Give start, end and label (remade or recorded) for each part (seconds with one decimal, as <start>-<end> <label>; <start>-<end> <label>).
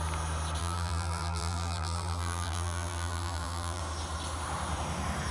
0.0-0.6 recorded; 0.6-3.8 remade; 3.8-5.3 recorded